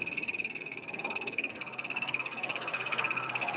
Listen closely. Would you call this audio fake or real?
fake